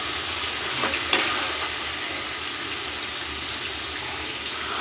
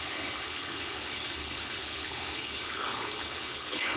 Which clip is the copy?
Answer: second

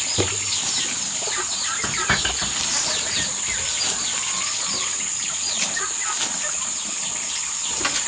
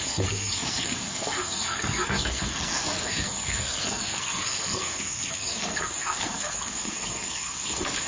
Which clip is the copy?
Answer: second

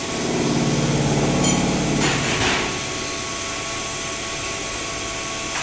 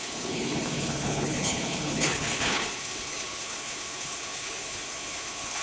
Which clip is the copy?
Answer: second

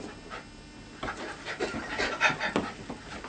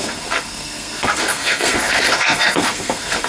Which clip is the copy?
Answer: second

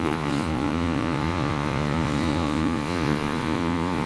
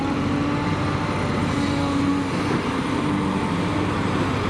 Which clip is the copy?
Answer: first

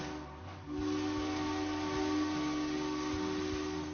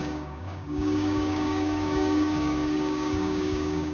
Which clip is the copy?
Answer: second